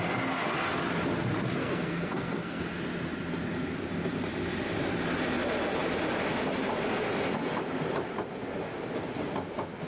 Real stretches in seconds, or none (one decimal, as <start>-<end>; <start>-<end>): 0.0-1.6; 2.6-9.9